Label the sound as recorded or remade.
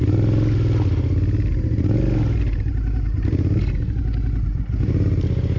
recorded